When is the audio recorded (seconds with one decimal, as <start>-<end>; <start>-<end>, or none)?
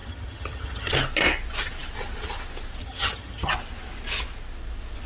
0.9-2.8; 3.5-5.1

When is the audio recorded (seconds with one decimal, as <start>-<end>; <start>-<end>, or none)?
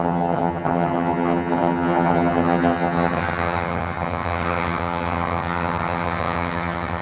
none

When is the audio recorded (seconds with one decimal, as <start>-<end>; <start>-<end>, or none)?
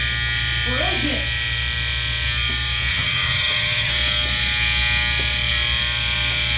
0.0-2.9; 3.9-6.6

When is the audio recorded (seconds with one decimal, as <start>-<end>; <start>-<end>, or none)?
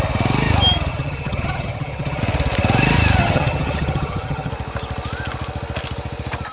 0.0-0.9; 2.2-3.2; 4.5-6.5